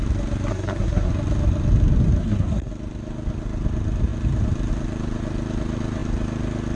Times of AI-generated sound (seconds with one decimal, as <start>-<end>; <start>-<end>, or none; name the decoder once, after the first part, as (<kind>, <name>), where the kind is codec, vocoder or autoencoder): 0.5-1.1 (codec, SNAC); 2.2-2.7